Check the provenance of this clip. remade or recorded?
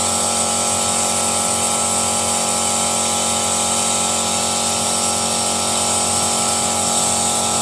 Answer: recorded